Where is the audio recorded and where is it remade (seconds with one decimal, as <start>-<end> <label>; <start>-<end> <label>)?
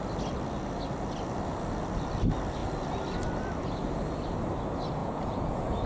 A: 0.0-5.0 recorded; 5.0-5.9 remade